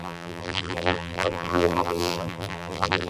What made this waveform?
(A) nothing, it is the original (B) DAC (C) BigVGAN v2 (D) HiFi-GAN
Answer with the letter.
C